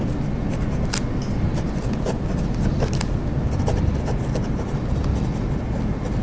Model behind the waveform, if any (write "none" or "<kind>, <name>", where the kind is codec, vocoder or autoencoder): none